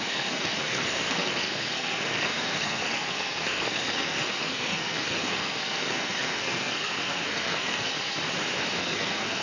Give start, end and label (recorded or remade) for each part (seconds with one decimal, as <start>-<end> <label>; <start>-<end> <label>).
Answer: 0.0-7.9 remade; 7.9-8.8 recorded; 8.8-9.4 remade

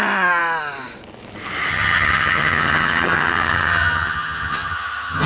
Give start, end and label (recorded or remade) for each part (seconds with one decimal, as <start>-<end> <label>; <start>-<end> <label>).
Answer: 0.0-1.7 recorded; 1.7-5.3 remade

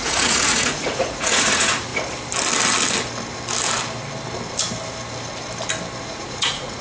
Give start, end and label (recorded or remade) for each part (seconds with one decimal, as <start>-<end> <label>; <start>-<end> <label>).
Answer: 0.0-1.9 remade; 1.9-6.0 recorded; 6.0-6.8 remade

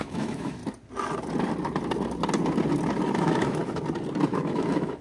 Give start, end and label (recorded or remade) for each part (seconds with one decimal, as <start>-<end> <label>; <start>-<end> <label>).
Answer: 0.0-0.6 remade; 0.6-3.2 recorded; 3.2-3.6 remade; 3.6-4.3 recorded; 4.3-5.0 remade

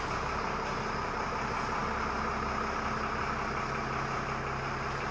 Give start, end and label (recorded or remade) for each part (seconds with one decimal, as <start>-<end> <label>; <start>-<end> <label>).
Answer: 0.0-5.1 recorded

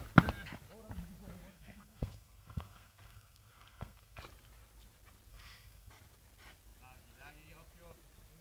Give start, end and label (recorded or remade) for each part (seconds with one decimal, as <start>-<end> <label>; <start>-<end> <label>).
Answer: 0.0-1.5 recorded; 1.5-4.2 remade; 4.2-5.3 recorded; 5.3-5.9 remade; 5.9-8.4 recorded

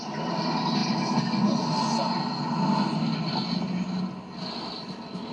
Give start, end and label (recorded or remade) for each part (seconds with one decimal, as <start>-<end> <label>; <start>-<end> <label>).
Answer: 0.0-5.3 recorded

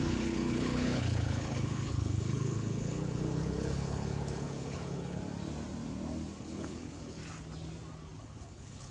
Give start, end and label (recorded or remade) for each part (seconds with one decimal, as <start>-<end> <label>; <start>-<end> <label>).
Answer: 0.0-5.2 remade; 5.2-6.4 recorded; 6.4-7.2 remade; 7.2-8.2 recorded; 8.2-8.9 remade